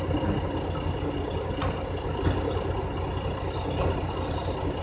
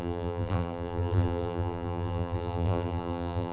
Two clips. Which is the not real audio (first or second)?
second